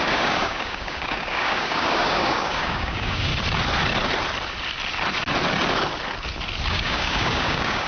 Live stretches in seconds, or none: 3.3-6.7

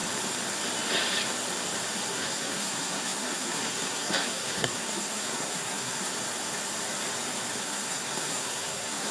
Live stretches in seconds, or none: 0.0-2.1; 6.1-7.6

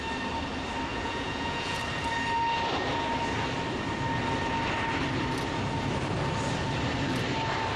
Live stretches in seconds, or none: 0.0-0.9; 1.8-7.8

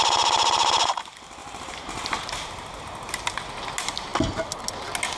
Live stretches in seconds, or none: 0.0-1.4; 2.8-5.2

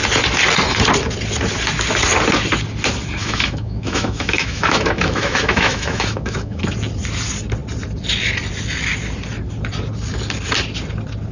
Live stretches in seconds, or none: 0.0-3.2; 6.6-11.3

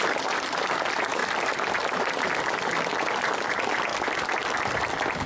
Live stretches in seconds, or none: 0.0-5.3